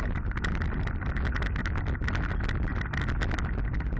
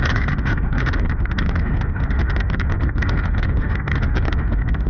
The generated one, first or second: second